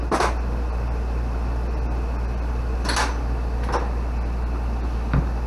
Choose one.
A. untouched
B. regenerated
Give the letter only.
A